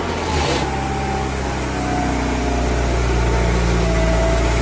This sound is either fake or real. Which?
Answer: real